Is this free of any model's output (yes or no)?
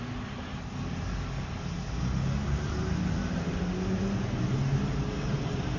yes